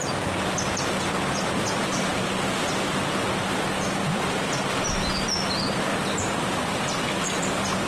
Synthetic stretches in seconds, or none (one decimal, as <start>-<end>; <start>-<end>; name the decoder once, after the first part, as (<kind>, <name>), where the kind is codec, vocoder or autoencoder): none